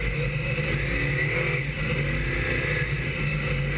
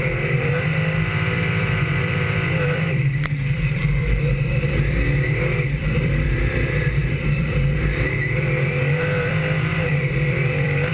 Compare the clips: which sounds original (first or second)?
first